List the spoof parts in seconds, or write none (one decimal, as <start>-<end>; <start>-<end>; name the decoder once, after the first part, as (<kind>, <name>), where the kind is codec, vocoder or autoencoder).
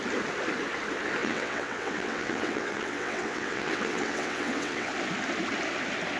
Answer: 1.2-4.9 (vocoder, WaveNeXt)